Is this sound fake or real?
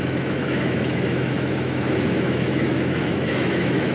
fake